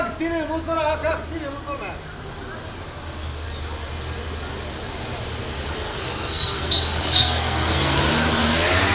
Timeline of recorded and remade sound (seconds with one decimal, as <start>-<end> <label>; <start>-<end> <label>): 0.0-5.9 recorded; 5.9-8.0 remade; 8.0-8.9 recorded